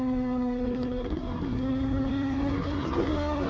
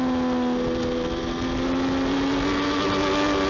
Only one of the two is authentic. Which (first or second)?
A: second